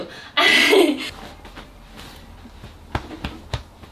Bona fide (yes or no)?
yes